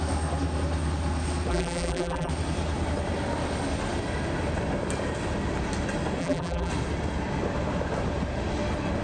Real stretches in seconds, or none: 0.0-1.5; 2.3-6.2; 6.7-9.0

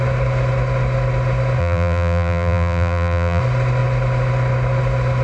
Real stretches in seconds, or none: 0.0-1.6; 3.4-5.2